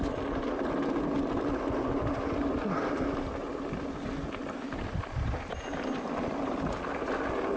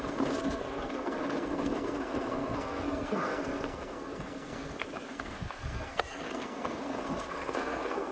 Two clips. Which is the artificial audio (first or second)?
second